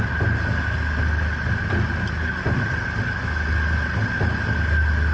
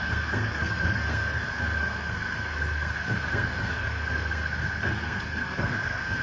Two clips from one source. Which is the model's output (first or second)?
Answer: second